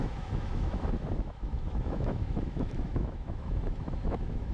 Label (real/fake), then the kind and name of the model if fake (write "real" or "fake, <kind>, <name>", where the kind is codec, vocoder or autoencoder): fake, autoencoder, DAC-VAE